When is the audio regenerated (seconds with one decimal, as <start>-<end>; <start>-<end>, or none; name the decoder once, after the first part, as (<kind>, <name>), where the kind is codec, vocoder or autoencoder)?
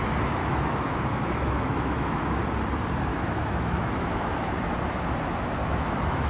0.4-2.4 (autoencoder, DAC-VAE); 3.1-4.5; 5.6-6.3